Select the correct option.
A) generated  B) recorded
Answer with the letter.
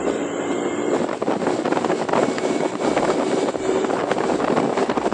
B